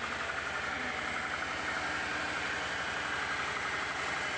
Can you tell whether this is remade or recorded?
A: recorded